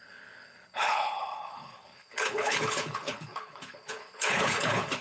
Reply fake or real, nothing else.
fake